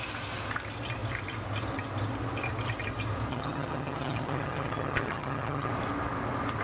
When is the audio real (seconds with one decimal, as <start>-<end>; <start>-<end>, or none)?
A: 0.0-3.3; 5.7-6.6